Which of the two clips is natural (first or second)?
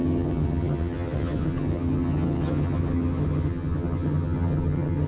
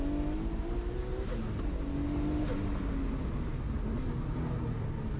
second